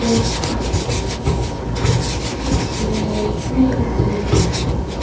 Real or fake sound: real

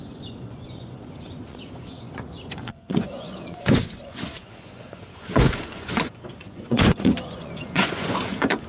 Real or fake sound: fake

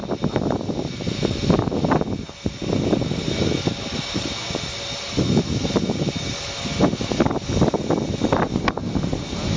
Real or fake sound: real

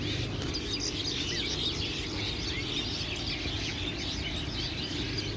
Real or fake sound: real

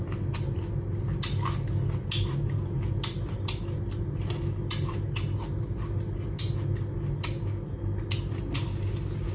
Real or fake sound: real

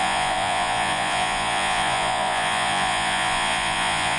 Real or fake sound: fake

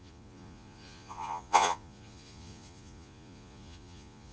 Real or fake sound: fake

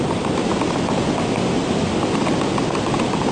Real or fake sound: real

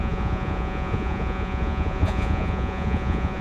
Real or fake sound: fake